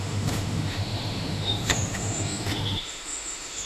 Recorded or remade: remade